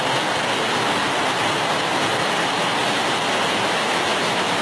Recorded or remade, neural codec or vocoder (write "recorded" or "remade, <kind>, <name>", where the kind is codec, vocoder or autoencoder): recorded